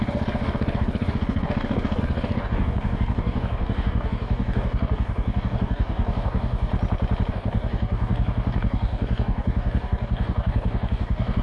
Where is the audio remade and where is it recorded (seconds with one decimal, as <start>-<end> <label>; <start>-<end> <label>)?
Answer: 0.0-6.7 remade; 6.7-7.3 recorded; 7.3-11.4 remade